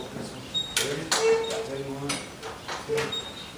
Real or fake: real